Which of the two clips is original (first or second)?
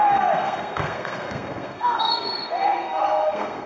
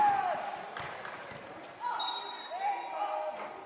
second